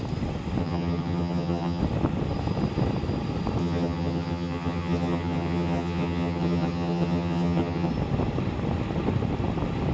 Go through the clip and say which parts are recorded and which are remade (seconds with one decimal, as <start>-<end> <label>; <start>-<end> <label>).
0.0-0.6 recorded; 0.6-1.8 remade; 1.8-3.6 recorded; 3.6-7.9 remade; 7.9-9.9 recorded